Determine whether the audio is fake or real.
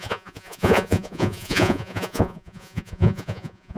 fake